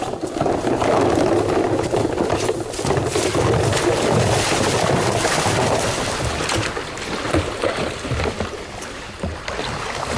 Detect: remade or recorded recorded